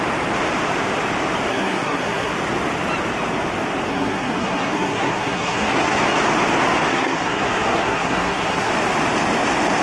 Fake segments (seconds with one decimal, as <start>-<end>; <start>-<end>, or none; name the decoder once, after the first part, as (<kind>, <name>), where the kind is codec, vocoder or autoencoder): 1.5-2.3 (codec, SNAC); 3.9-6.0; 6.9-8.7